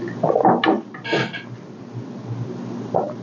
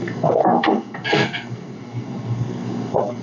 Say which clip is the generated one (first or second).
second